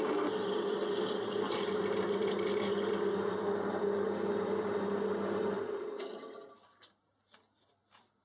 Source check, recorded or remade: recorded